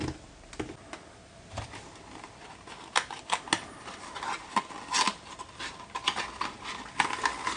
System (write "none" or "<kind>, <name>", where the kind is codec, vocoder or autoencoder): none